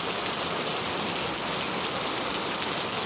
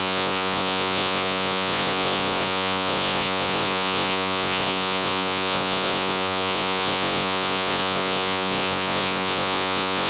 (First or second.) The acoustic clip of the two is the first